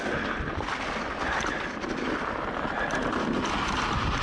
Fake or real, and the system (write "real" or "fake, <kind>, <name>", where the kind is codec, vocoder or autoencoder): real